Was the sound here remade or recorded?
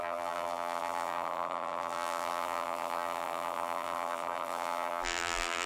remade